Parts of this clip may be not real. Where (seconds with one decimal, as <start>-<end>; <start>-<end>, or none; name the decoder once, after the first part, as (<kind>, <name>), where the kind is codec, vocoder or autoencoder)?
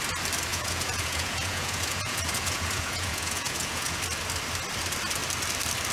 0.5-4.0 (vocoder, Vocos)